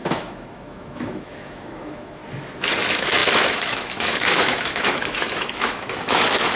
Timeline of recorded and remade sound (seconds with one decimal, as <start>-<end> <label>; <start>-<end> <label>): 0.0-2.2 remade; 2.2-2.8 recorded; 2.8-6.6 remade